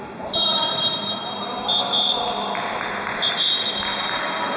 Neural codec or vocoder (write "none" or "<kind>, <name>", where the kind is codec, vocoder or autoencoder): none